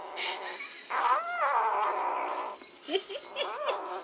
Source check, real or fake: real